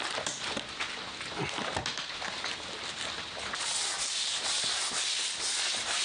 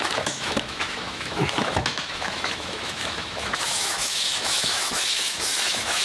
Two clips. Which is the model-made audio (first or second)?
second